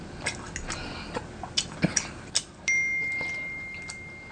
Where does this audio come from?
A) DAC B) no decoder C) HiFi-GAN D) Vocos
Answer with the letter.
B